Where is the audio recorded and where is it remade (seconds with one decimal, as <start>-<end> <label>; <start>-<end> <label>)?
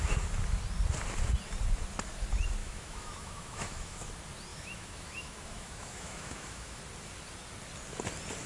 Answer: 0.0-2.6 recorded; 2.6-4.1 remade; 4.1-4.5 recorded; 4.5-6.8 remade; 6.8-8.5 recorded